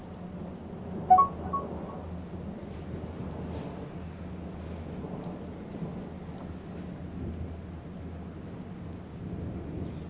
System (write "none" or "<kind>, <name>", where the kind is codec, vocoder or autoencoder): none